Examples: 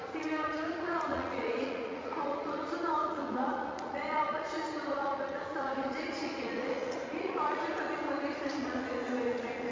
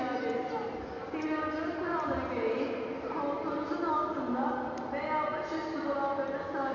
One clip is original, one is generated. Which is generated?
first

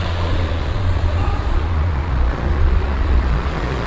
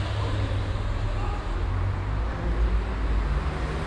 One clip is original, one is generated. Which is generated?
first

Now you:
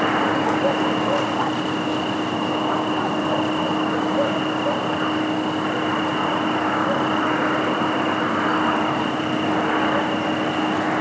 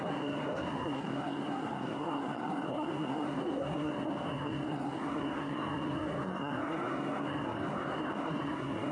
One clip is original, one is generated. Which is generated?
second